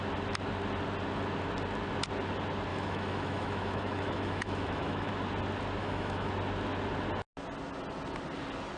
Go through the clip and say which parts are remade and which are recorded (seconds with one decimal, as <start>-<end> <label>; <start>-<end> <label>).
0.0-2.7 recorded; 2.7-5.1 remade; 5.1-5.8 recorded; 5.8-6.3 remade; 6.3-8.8 recorded